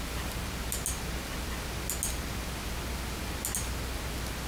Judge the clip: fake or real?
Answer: real